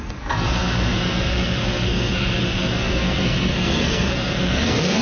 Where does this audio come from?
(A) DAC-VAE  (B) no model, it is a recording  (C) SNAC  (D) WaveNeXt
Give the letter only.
C